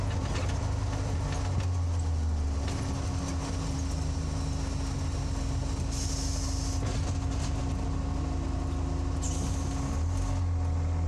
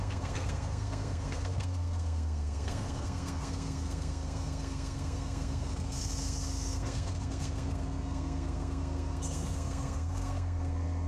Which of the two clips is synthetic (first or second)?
second